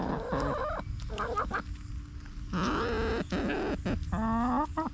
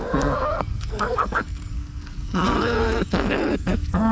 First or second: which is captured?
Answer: first